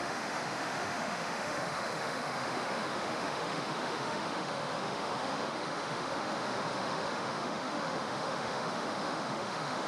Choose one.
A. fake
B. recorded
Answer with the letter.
A